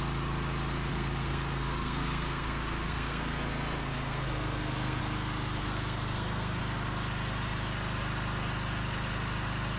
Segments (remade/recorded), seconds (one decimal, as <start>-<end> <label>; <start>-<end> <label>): 0.0-0.9 recorded; 0.9-5.0 remade; 5.0-5.6 recorded; 5.6-6.6 remade; 6.6-9.8 recorded